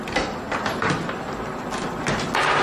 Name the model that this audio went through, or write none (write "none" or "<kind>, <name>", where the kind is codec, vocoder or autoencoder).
none